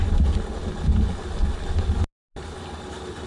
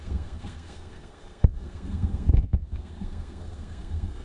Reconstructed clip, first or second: second